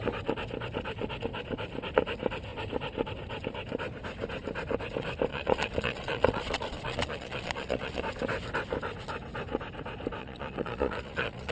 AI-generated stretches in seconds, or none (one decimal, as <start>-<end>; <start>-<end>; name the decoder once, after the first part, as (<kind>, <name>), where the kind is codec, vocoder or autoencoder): 5.3-8.0 (vocoder, Vocos); 10.2-11.5